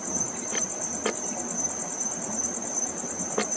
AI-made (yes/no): yes